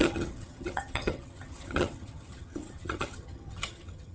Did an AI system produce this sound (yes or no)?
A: yes